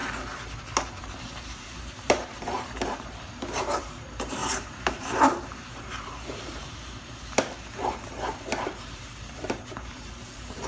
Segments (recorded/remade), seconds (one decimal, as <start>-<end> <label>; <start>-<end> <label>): 0.0-1.0 recorded; 1.0-10.7 remade